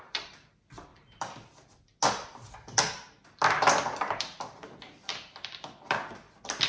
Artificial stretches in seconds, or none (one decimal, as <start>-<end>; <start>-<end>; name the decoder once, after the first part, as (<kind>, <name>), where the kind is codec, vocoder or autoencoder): none